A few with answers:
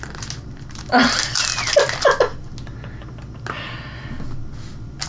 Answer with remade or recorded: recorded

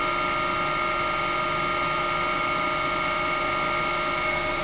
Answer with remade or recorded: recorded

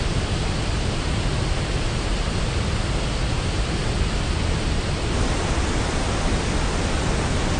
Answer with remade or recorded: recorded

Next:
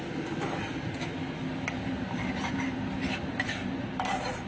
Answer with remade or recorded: recorded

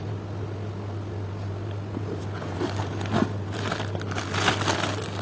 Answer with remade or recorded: recorded